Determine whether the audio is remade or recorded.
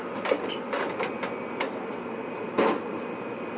remade